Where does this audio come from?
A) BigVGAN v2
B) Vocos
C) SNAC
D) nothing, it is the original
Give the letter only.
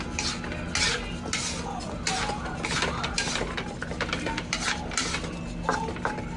D